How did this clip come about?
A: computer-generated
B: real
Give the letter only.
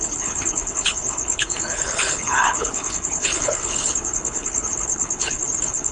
A